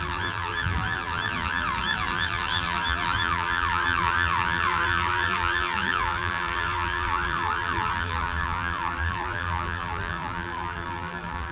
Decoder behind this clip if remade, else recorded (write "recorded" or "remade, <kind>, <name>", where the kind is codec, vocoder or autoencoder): remade, vocoder, BigVGAN v2